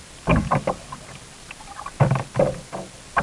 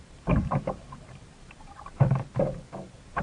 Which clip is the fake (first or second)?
second